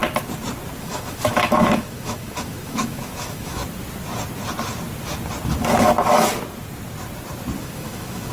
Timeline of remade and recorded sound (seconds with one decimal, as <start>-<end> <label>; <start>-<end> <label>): 0.0-0.8 recorded; 0.8-3.6 remade; 3.6-7.6 recorded; 7.6-8.3 remade